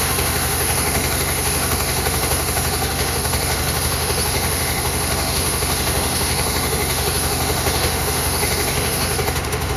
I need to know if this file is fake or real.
fake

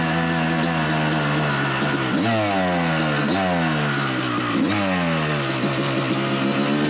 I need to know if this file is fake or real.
real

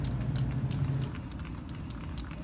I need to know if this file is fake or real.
real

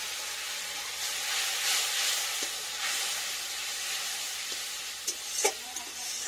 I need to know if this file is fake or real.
real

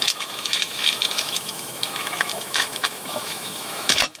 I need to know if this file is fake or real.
fake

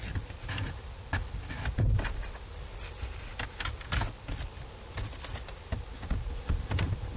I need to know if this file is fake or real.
real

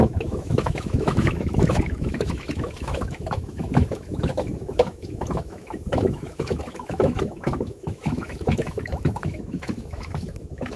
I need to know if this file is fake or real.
fake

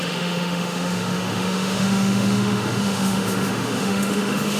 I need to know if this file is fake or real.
fake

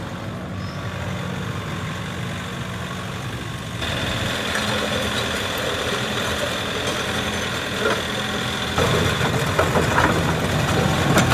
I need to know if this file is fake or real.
real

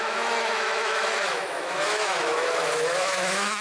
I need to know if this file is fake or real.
fake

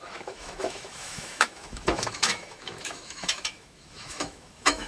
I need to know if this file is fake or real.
fake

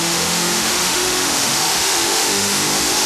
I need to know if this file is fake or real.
fake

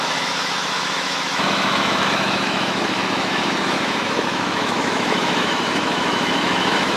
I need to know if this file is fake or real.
fake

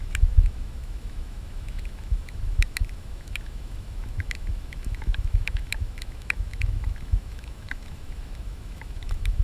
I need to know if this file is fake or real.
fake